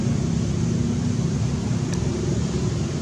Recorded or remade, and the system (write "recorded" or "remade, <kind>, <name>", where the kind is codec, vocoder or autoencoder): recorded